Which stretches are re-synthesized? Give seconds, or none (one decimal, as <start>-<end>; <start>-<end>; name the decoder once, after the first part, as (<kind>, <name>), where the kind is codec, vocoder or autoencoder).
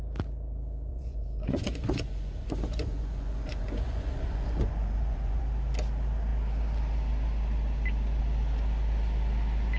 0.9-5.4 (vocoder, Vocos)